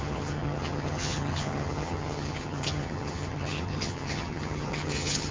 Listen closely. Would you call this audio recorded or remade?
remade